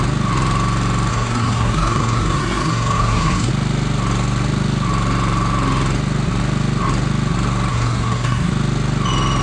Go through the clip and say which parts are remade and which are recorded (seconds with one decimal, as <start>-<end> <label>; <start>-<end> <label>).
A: 0.0-1.1 recorded; 1.1-3.5 remade; 3.5-7.7 recorded; 7.7-8.5 remade; 8.5-9.4 recorded